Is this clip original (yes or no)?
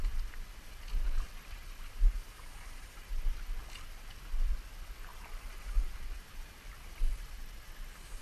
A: yes